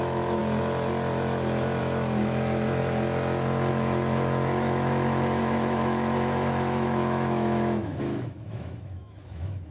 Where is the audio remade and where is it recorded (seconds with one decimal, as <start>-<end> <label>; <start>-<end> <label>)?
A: 0.0-0.4 remade; 0.4-1.8 recorded; 1.8-2.8 remade; 2.8-3.7 recorded; 3.7-9.7 remade